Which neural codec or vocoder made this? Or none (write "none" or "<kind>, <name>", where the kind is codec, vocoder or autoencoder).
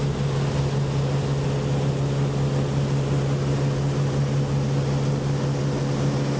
none